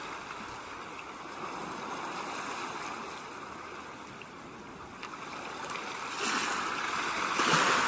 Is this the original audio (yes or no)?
yes